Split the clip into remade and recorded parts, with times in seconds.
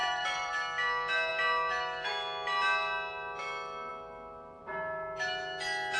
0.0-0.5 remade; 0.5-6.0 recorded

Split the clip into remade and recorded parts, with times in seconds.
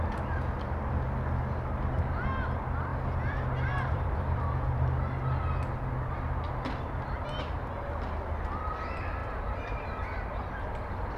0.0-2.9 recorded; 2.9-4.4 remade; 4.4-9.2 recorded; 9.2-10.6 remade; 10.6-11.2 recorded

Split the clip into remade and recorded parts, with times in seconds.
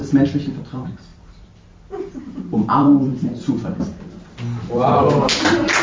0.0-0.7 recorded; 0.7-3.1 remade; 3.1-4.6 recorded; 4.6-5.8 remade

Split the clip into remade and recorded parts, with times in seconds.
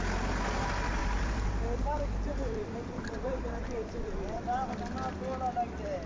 0.0-1.0 recorded; 1.0-4.7 remade; 4.7-6.1 recorded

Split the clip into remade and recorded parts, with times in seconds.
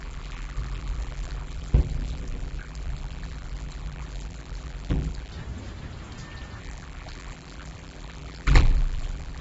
0.0-5.3 remade; 5.3-6.6 recorded; 6.6-9.4 remade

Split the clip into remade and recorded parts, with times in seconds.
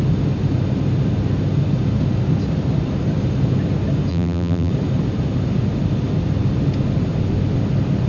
0.0-4.1 recorded; 4.1-4.7 remade; 4.7-8.1 recorded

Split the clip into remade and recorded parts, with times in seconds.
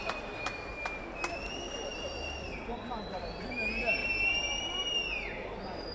0.0-4.0 recorded; 4.0-4.6 remade; 4.6-5.9 recorded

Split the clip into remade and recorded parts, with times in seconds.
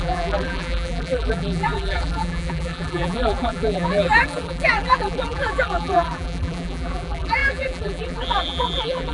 0.0-9.1 remade